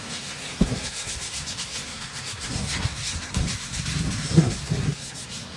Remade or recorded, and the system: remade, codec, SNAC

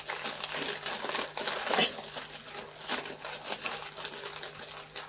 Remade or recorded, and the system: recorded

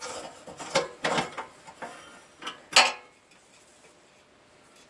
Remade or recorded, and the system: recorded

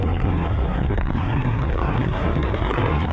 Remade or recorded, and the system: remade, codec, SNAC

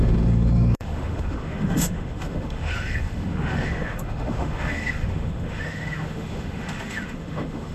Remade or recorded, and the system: remade, autoencoder, DAC-VAE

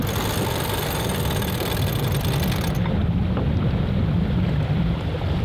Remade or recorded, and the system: remade, vocoder, BigVGAN v2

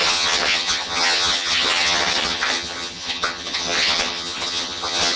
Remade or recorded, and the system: remade, vocoder, HiFi-GAN